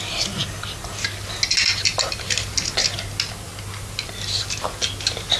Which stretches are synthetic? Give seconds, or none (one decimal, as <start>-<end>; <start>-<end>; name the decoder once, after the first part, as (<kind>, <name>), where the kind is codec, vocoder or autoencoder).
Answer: none